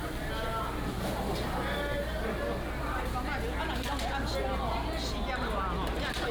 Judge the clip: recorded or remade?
recorded